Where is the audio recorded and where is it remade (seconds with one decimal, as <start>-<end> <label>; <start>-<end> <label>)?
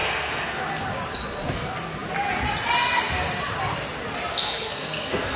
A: 0.0-0.6 remade; 0.6-4.3 recorded; 4.3-5.4 remade